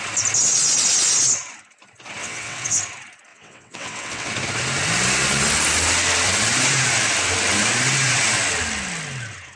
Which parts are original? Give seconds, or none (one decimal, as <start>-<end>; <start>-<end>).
0.0-2.2; 2.8-3.3; 4.3-9.6